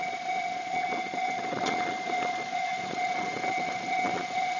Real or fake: fake